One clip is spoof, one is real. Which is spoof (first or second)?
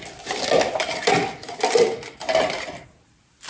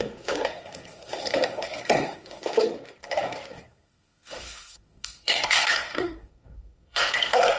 second